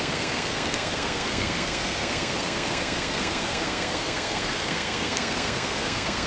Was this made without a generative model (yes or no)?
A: no